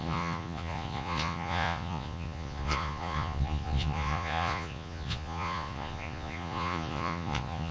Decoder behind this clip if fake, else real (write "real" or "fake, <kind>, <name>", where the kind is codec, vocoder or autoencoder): fake, vocoder, Vocos